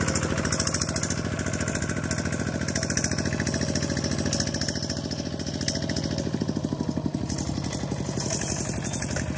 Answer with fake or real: real